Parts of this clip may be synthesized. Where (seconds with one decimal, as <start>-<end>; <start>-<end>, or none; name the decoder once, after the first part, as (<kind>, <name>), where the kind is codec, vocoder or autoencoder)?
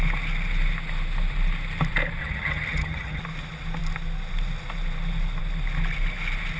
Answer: 2.2-3.2 (vocoder, HiFi-GAN)